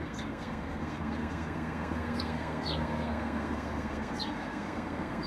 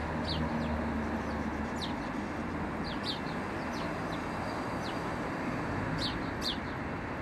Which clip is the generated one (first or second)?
first